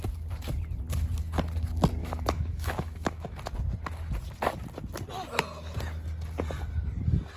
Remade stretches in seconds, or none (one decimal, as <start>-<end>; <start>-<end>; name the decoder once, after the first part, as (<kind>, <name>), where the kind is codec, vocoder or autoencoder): 2.0-3.4 (autoencoder, DAC-VAE)